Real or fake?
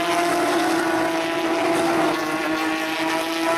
real